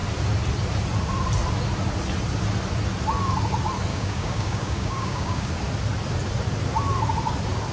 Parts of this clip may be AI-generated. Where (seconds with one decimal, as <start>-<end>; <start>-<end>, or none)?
3.9-5.5